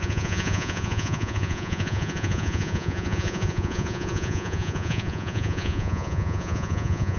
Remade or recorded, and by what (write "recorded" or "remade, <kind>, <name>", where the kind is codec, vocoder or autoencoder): remade, vocoder, Vocos